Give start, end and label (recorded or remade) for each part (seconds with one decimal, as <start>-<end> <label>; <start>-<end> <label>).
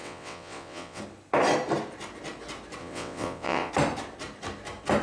0.0-1.0 remade; 1.0-2.8 recorded; 2.8-3.7 remade; 3.7-5.0 recorded